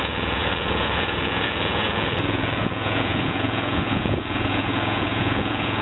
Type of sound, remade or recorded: remade